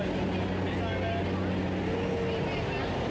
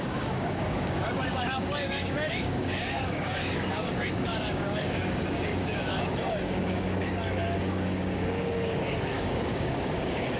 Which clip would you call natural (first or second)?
first